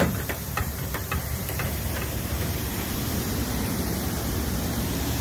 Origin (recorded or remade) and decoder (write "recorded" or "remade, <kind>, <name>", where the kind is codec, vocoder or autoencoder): remade, vocoder, BigVGAN v2